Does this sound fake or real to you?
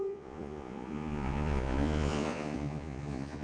fake